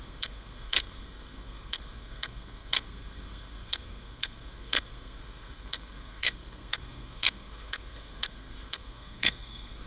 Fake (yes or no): yes